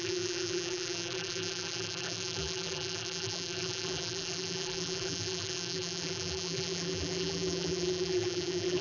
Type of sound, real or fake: fake